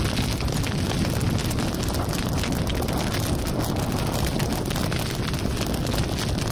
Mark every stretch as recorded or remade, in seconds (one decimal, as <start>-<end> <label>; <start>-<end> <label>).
0.0-6.5 recorded